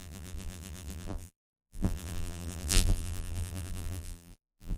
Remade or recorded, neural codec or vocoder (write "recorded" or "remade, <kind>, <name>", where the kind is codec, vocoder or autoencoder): remade, vocoder, BigVGAN v2